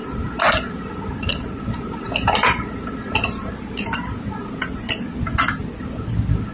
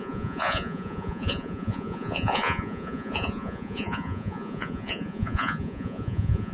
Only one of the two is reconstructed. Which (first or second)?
second